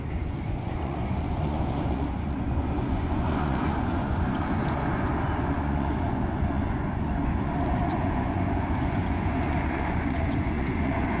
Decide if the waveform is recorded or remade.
remade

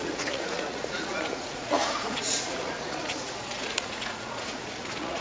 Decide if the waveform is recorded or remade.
remade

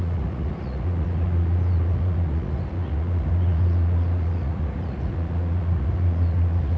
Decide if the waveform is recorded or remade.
remade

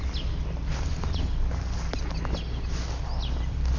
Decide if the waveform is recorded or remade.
recorded